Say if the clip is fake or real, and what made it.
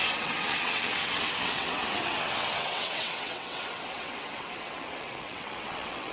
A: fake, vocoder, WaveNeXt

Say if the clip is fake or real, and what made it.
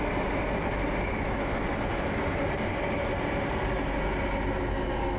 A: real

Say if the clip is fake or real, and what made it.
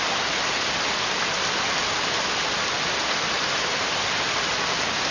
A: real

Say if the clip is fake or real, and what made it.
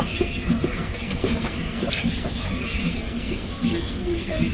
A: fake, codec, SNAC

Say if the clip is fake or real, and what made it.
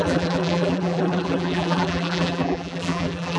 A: fake, vocoder, BigVGAN v2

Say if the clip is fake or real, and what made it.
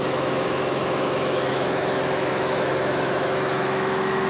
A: fake, autoencoder, DAC-VAE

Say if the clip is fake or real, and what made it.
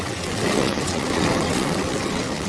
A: fake, vocoder, WaveNeXt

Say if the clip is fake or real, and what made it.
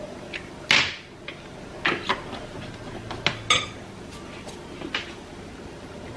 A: real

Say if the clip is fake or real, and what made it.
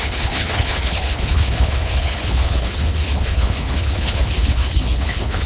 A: fake, codec, HILCodec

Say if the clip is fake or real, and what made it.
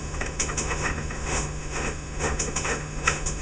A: fake, autoencoder, DAC-VAE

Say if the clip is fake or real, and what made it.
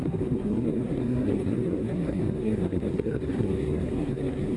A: fake, codec, SNAC